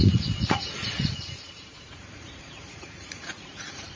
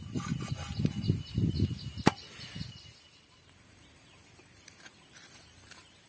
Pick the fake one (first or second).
first